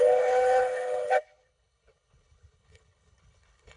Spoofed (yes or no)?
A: yes